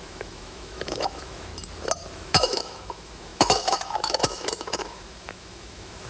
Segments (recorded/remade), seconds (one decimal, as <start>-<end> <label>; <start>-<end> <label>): 0.0-1.5 remade; 1.5-2.1 recorded; 2.1-6.1 remade

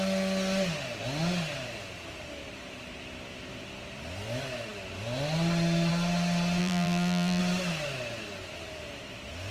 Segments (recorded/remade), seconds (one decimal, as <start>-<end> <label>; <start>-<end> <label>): 0.0-6.6 recorded; 6.6-7.4 remade; 7.4-9.5 recorded

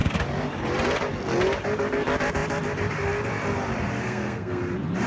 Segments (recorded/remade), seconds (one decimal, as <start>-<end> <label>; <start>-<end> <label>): 0.0-4.0 recorded; 4.0-4.6 remade; 4.6-5.1 recorded

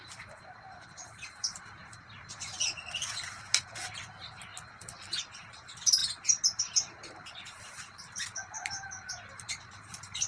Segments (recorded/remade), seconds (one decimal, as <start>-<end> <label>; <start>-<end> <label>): 0.0-4.5 remade; 4.5-5.2 recorded; 5.2-6.0 remade; 6.0-6.6 recorded; 6.6-10.3 remade

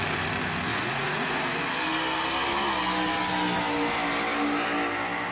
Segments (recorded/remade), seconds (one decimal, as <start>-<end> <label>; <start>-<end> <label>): 0.0-0.7 recorded; 0.7-1.4 remade; 1.4-5.3 recorded